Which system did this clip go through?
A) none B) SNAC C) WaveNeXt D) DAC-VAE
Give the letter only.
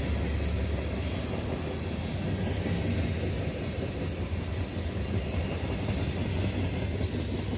A